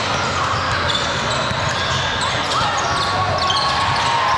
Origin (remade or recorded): recorded